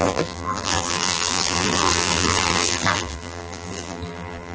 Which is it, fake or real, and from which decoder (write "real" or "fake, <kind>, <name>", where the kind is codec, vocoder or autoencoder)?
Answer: fake, vocoder, BigVGAN v2